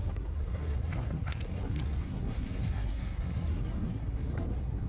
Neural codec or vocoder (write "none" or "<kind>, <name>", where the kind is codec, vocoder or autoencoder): codec, SNAC